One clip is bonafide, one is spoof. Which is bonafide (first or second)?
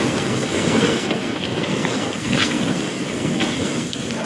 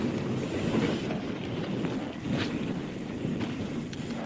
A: second